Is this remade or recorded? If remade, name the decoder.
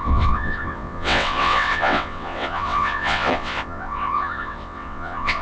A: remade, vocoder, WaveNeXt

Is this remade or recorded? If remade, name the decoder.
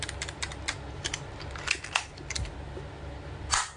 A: recorded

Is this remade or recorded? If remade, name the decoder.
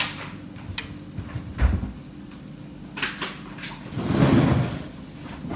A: recorded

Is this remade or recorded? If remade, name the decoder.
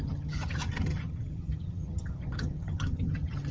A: remade, vocoder, HiFi-GAN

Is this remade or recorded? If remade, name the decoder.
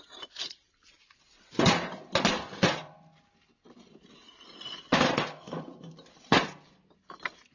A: recorded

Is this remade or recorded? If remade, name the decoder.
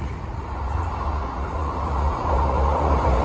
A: remade, vocoder, Vocos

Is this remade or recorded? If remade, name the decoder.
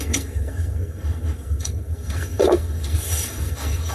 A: remade, codec, SNAC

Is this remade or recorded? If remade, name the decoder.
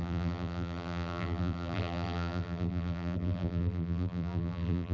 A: remade, vocoder, BigVGAN v2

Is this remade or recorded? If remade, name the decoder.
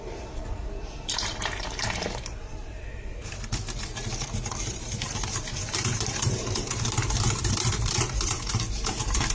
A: remade, vocoder, BigVGAN v2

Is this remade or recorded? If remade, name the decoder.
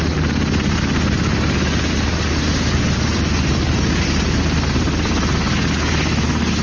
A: recorded